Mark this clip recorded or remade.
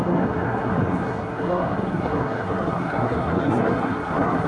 remade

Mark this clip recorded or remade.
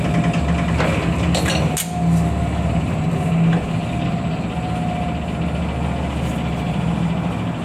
recorded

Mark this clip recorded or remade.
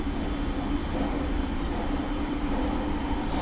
recorded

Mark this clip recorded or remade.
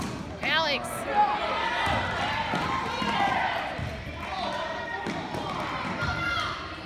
recorded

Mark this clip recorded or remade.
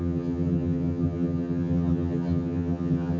remade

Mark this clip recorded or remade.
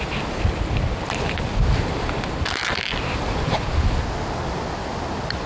recorded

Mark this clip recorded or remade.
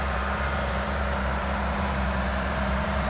remade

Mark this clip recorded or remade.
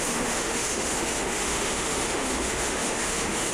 remade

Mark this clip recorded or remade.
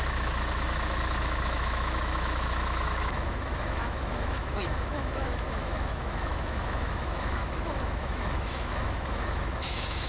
remade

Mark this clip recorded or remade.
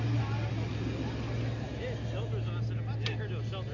recorded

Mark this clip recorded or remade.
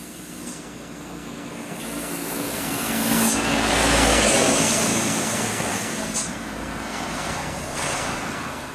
remade